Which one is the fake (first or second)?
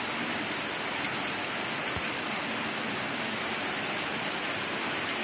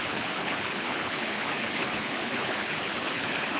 second